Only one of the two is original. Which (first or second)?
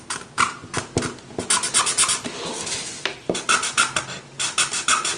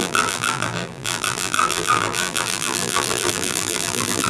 first